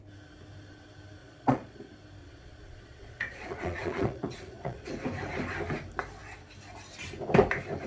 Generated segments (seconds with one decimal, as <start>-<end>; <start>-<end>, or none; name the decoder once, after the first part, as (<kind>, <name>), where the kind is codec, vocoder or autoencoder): 1.2-1.8 (vocoder, Vocos); 2.2-4.9